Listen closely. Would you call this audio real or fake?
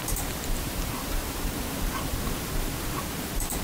fake